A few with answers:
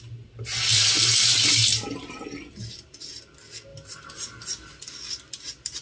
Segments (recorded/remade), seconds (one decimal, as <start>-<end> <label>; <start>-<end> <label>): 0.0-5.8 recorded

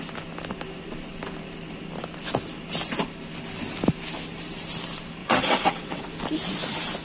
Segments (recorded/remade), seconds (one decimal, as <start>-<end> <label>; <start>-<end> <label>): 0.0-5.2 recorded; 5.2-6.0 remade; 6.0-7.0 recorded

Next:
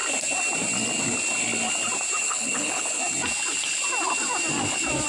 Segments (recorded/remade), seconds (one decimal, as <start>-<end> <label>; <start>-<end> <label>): 0.0-2.2 recorded; 2.2-3.0 remade; 3.0-5.1 recorded